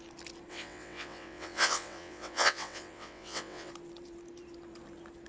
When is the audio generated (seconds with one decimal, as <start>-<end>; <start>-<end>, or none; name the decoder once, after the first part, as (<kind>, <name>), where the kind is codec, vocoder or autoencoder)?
0.5-3.7 (vocoder, WaveNeXt)